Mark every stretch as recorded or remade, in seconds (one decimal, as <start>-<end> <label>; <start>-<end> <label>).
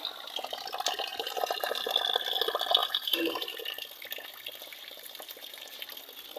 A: 0.0-1.1 recorded; 1.1-1.9 remade; 1.9-2.8 recorded; 2.8-3.6 remade; 3.6-4.7 recorded; 4.7-5.8 remade; 5.8-6.4 recorded